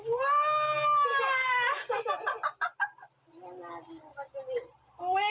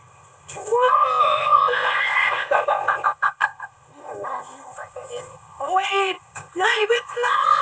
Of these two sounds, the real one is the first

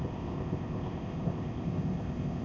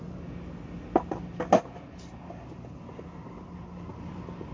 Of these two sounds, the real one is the second